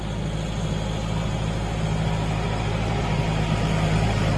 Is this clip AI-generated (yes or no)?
no